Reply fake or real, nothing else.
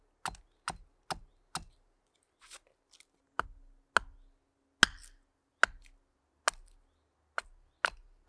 real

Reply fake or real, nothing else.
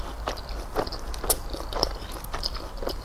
real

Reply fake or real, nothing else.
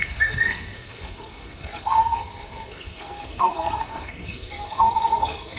fake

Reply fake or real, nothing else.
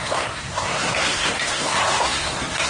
fake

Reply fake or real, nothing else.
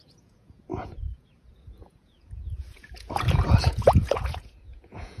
fake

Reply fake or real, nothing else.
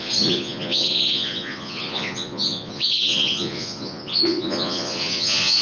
fake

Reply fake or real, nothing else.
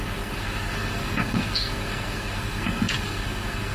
fake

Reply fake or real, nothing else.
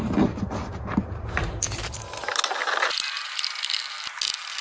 real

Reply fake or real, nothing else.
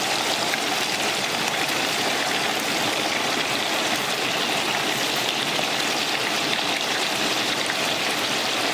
fake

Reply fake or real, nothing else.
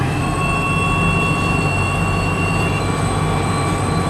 real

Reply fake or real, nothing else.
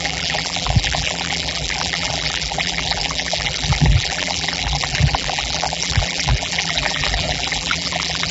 fake